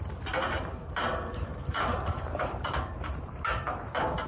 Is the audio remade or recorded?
remade